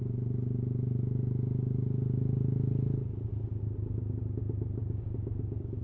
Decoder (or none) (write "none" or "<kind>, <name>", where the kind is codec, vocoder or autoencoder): none